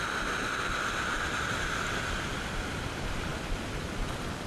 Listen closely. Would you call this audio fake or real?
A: real